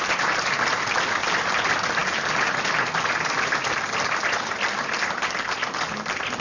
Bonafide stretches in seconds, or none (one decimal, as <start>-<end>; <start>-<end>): 0.0-6.4